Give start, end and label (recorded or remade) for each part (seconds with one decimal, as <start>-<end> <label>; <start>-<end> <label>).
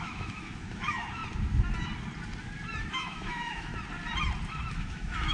0.0-1.2 remade; 1.2-2.8 recorded; 2.8-3.7 remade; 3.7-4.7 recorded; 4.7-5.3 remade